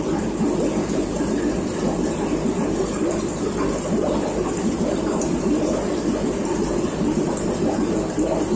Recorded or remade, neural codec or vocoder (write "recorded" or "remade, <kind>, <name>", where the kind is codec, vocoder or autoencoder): recorded